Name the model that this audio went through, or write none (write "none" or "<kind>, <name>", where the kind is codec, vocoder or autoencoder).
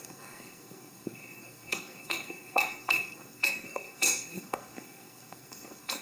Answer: codec, SNAC